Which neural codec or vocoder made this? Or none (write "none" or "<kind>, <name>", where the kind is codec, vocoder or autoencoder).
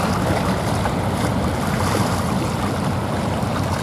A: none